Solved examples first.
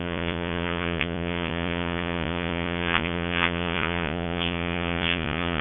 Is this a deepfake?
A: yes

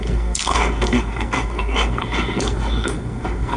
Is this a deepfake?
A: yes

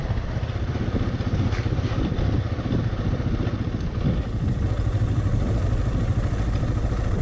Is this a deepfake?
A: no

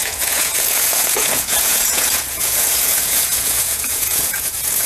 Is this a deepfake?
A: yes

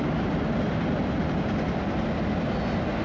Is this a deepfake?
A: no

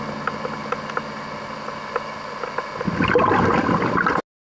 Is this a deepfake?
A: no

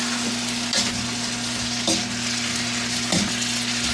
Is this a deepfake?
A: no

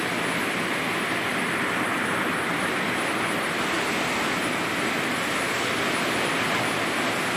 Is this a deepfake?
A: no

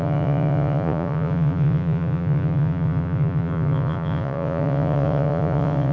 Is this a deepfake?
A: yes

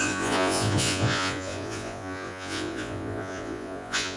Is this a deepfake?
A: yes